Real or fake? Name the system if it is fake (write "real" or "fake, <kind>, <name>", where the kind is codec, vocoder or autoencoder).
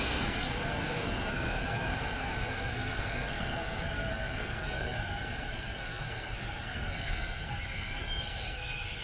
fake, codec, SNAC